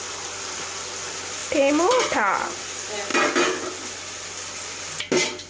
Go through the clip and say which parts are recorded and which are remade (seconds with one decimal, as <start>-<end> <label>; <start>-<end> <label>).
0.0-5.5 recorded